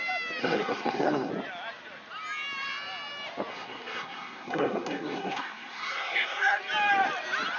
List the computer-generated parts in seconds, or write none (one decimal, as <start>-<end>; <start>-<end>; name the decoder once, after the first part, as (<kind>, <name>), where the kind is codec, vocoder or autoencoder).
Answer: 0.4-1.3 (codec, SNAC); 3.5-6.6